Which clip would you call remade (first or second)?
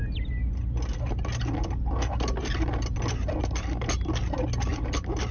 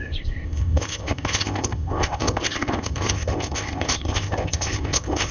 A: second